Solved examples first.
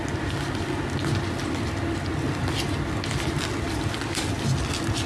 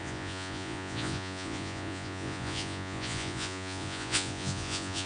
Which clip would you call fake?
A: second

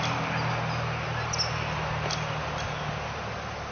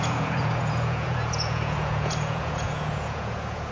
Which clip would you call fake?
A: second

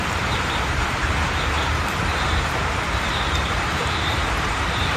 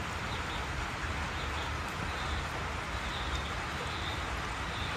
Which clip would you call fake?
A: first